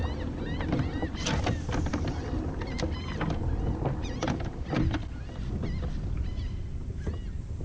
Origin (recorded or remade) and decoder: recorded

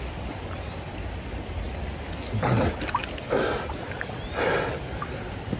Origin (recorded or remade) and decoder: recorded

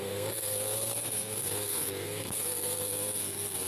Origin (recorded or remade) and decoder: remade, codec, SNAC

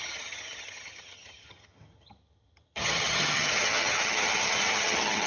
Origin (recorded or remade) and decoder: remade, vocoder, HiFi-GAN